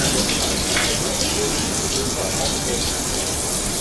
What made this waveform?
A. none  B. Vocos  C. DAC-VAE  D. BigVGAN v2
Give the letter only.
A